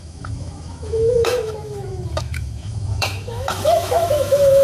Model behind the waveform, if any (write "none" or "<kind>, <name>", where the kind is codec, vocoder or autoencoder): autoencoder, DAC-VAE